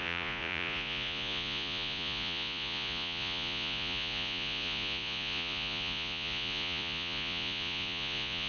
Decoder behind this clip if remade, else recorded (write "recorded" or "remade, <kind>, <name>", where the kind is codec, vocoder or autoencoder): remade, vocoder, Vocos